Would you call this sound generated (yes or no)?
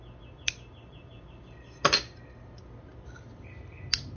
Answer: no